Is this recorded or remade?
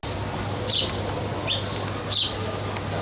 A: recorded